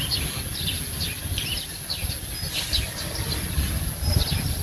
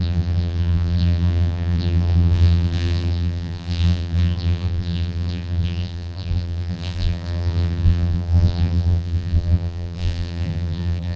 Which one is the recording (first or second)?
first